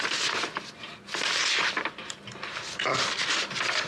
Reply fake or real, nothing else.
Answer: real